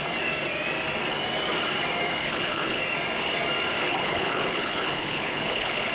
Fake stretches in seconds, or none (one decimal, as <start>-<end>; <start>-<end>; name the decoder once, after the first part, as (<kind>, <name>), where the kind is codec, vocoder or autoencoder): 2.2-2.8 (codec, HILCodec); 3.8-5.9